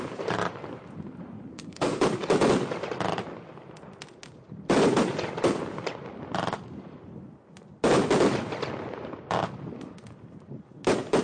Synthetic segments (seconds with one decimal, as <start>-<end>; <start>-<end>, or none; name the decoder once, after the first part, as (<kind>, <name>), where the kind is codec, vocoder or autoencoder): 1.5-2.0 (codec, SNAC)